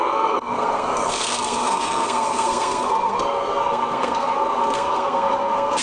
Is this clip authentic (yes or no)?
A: no